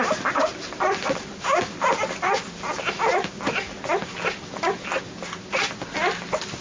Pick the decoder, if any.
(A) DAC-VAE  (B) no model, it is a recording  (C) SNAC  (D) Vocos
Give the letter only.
B